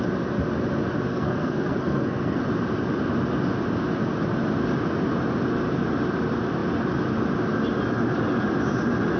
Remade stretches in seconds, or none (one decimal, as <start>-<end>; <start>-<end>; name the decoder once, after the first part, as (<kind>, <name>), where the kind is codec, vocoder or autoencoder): 1.1-2.4 (codec, SNAC)